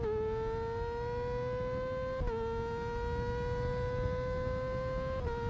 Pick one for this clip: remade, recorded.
recorded